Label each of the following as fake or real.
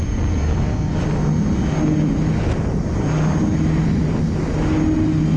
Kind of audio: real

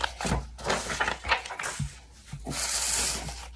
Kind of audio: real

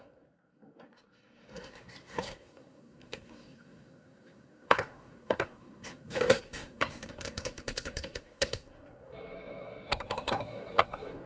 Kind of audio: fake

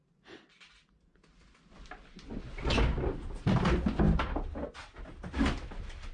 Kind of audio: real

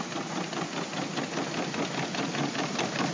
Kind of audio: real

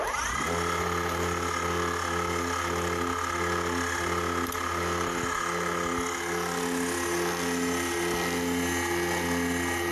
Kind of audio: real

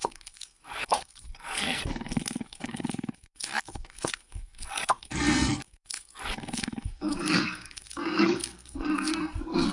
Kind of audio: fake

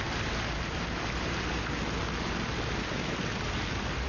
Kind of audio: real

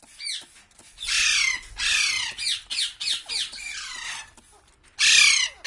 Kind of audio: real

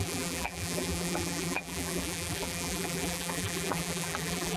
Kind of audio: fake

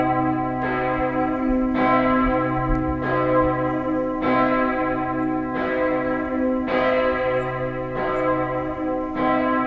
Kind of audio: real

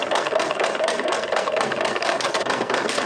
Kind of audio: fake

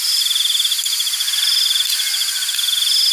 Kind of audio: real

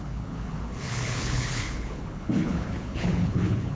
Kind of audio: fake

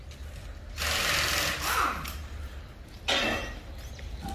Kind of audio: real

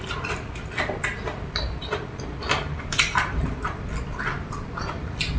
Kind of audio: fake